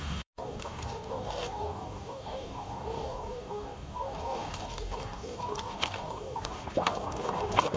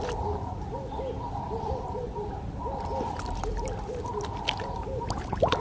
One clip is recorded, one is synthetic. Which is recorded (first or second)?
second